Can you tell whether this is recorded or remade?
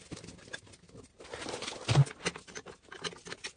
recorded